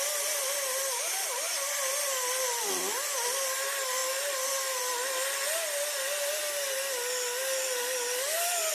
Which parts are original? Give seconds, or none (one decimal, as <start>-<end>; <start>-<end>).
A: 0.0-8.7